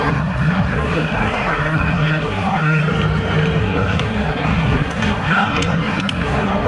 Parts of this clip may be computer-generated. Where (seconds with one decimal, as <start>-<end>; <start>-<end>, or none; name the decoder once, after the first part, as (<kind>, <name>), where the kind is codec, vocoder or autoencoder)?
0.0-2.8 (codec, SNAC); 3.6-6.7